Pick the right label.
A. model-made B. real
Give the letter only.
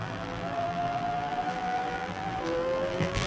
A